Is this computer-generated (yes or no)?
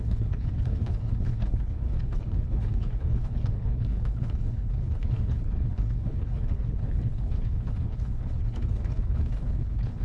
yes